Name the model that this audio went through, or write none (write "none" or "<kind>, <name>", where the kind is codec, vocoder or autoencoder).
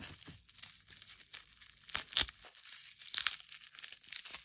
none